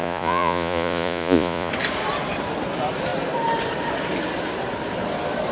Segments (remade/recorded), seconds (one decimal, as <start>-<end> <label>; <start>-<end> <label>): 0.0-1.7 remade; 1.7-5.5 recorded